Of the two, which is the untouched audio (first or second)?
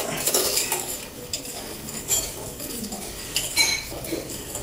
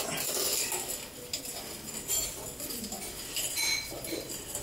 second